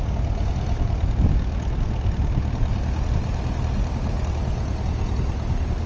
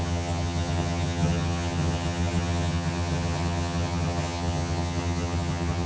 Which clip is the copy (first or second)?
second